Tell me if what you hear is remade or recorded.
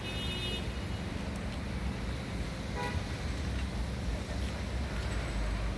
recorded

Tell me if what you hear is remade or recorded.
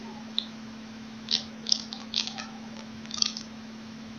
remade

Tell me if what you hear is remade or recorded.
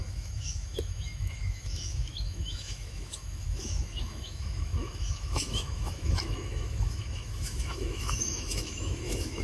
remade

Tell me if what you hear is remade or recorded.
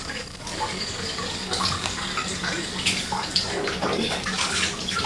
remade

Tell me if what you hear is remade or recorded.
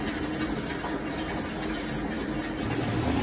recorded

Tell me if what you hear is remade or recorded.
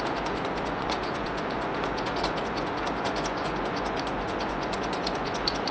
remade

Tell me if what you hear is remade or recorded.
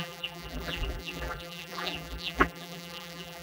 remade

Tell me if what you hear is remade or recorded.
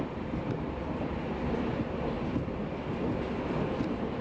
remade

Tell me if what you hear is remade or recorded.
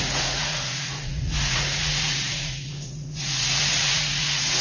remade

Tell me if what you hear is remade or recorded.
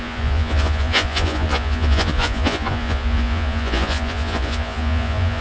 remade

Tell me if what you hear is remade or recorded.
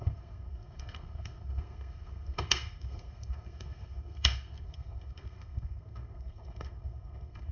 remade